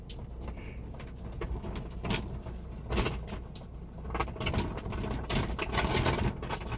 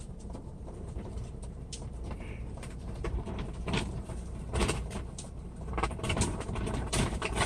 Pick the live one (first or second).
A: first